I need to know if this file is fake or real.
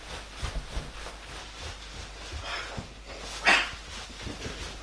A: real